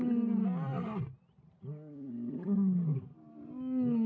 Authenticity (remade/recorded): recorded